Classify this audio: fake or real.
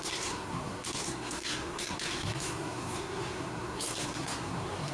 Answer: fake